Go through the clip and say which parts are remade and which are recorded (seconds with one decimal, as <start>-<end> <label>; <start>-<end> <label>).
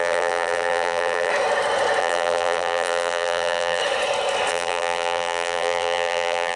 0.0-1.3 remade; 1.3-2.0 recorded; 2.0-3.8 remade; 3.8-4.5 recorded; 4.5-6.6 remade